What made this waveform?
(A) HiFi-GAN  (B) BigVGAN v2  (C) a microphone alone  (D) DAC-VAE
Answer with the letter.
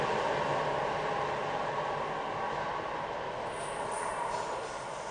C